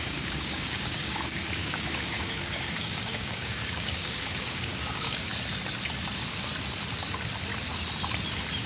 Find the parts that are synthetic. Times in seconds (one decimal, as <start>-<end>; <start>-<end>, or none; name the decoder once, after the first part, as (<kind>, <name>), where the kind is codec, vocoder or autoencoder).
0.0-5.3 (codec, DAC)